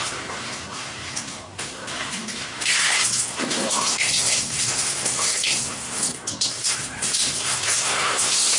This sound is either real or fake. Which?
fake